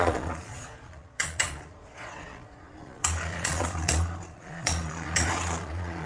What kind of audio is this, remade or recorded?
remade